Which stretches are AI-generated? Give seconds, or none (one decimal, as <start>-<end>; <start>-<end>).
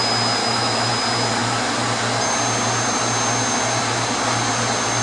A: 0.4-0.9